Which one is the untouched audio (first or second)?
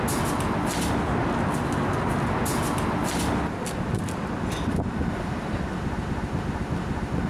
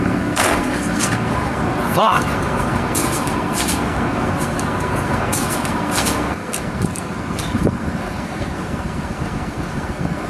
first